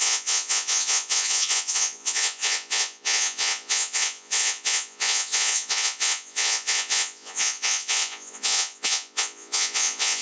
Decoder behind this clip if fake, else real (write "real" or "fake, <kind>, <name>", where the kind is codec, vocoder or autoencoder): fake, vocoder, Vocos